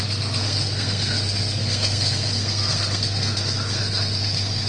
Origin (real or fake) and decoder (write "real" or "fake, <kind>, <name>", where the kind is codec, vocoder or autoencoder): fake, codec, SNAC